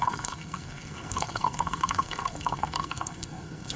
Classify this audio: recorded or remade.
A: remade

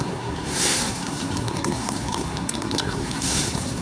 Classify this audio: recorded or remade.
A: remade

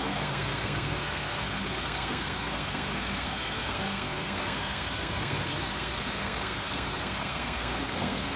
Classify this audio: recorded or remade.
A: remade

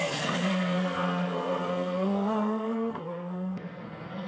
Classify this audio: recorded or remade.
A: remade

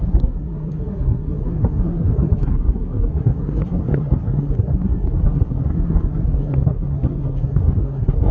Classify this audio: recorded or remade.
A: remade